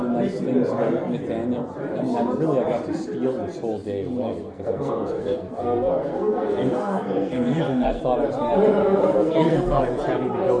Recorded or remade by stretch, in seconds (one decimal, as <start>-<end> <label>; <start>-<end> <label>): 0.0-4.2 recorded; 4.2-8.0 remade; 8.0-8.8 recorded; 8.8-9.8 remade; 9.8-10.6 recorded